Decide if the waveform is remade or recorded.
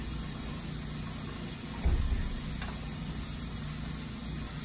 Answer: recorded